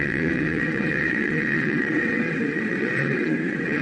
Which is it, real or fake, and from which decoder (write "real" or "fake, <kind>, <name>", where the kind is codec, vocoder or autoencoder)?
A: fake, vocoder, WaveNeXt